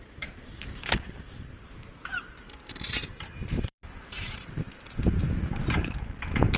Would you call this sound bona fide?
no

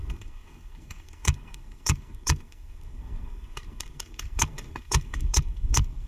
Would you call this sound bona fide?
no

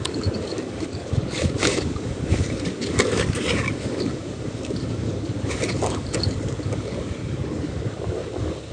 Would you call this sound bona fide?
no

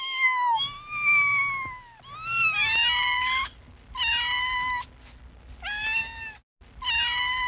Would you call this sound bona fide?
yes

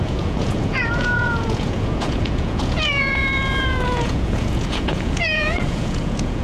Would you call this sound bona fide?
no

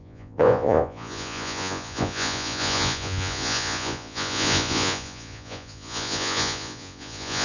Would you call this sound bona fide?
no